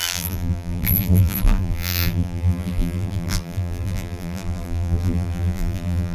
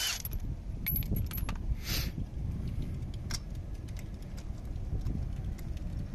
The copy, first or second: first